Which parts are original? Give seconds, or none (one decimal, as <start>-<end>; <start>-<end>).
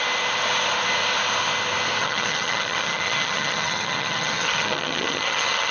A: 0.0-2.0